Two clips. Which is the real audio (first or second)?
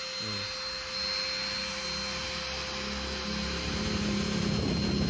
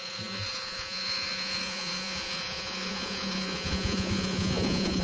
first